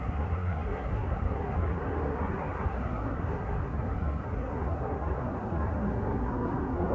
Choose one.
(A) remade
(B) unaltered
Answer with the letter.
A